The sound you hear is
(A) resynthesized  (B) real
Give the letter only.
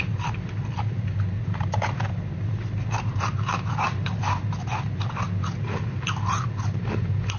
B